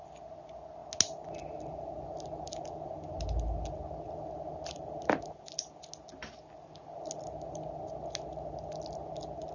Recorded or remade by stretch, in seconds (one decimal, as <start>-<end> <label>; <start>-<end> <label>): 0.0-9.5 recorded

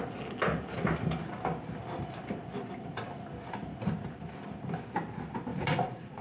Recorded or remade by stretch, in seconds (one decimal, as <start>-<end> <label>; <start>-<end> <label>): 0.0-5.5 recorded; 5.5-6.2 remade